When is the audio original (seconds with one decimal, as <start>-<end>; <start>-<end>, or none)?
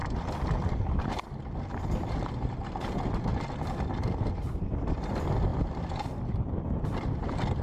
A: 0.0-7.6